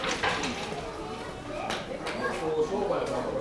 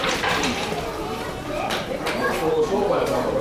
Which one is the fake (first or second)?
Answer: second